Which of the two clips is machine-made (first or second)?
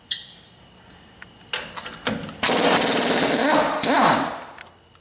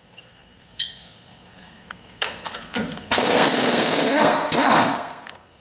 second